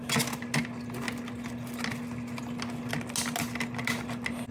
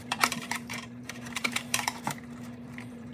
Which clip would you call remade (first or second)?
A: second